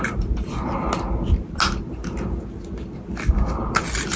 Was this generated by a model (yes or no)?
no